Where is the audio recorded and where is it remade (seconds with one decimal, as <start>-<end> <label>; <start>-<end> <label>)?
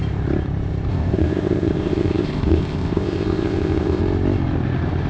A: 0.0-0.9 recorded; 0.9-4.0 remade; 4.0-5.1 recorded